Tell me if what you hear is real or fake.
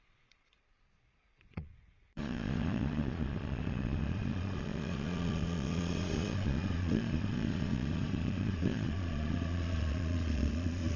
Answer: fake